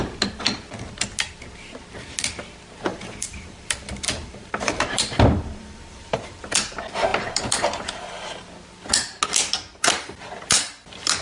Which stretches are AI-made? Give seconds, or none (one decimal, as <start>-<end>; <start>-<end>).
2.9-6.4